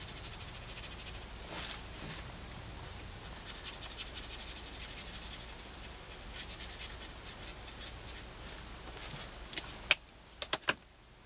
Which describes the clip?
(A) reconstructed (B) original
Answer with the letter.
B